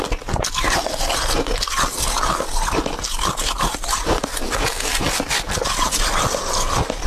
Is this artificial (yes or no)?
no